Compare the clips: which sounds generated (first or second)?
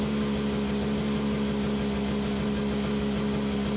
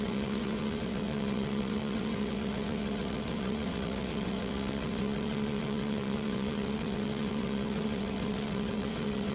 second